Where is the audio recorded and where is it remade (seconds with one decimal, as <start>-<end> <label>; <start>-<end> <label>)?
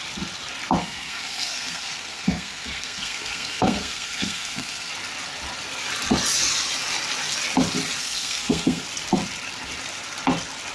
0.0-0.8 recorded; 0.8-4.9 remade; 4.9-8.0 recorded; 8.0-8.8 remade; 8.8-10.7 recorded